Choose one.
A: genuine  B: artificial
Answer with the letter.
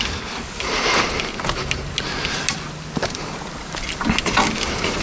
A